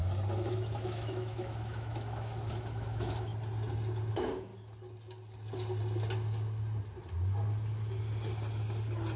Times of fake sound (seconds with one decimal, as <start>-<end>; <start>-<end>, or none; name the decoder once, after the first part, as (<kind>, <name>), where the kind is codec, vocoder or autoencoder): 0.5-3.3 (autoencoder, DAC-VAE); 4.1-4.5